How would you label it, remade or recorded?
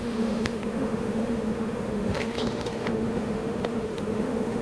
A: remade